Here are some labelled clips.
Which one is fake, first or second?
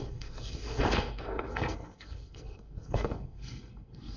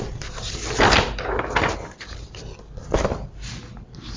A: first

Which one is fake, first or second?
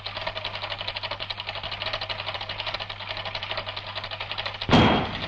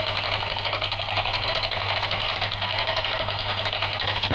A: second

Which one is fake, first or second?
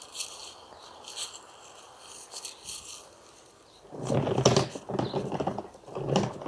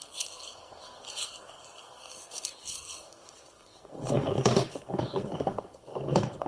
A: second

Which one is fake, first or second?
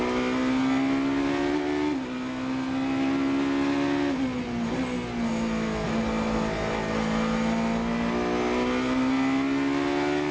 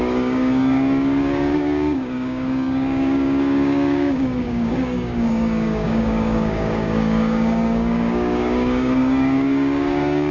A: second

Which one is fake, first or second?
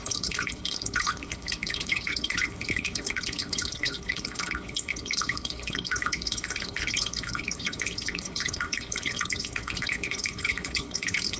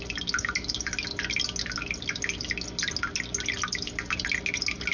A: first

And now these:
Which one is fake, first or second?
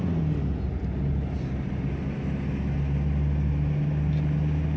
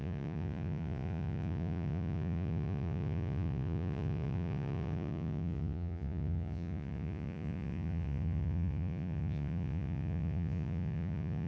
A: second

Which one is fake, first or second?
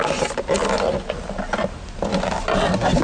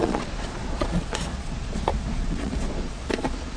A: second